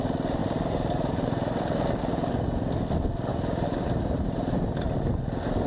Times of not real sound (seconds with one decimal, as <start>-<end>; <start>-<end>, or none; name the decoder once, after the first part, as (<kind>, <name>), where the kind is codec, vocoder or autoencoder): 0.4-2.3 (vocoder, BigVGAN v2); 3.3-5.2